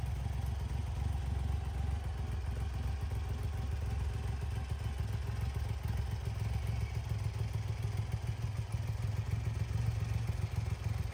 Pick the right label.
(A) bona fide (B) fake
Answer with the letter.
A